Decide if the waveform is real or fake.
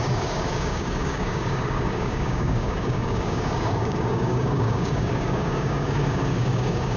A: fake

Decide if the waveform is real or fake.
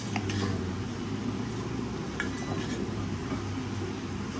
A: real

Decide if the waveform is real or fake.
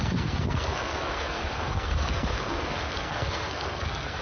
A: fake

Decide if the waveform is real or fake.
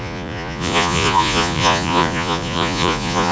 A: fake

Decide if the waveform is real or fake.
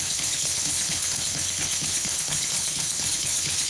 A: fake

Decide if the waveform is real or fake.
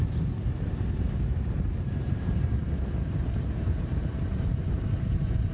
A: fake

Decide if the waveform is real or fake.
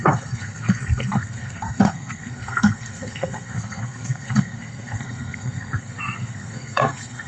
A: fake